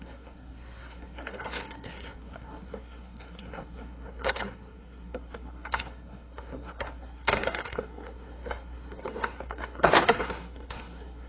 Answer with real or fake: fake